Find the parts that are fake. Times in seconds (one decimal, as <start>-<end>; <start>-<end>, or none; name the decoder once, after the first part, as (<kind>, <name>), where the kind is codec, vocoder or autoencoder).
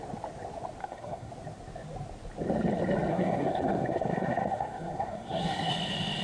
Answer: 0.8-1.3 (codec, SNAC); 3.1-5.7